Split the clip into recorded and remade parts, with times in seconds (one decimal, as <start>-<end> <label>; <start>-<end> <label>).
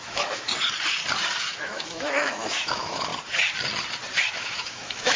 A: 0.0-0.5 remade; 0.5-1.4 recorded; 1.4-3.1 remade; 3.1-4.3 recorded; 4.3-5.2 remade